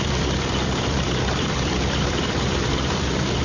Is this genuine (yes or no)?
no